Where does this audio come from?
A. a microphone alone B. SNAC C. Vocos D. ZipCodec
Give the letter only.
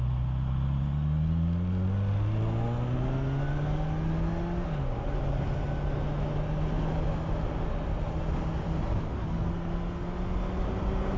A